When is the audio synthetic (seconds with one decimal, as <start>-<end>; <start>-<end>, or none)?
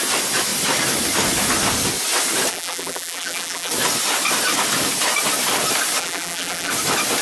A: 2.5-3.7; 6.0-6.7